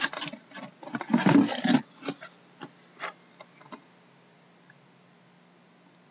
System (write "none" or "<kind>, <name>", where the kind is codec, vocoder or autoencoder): none